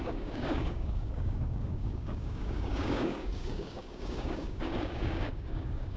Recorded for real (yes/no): no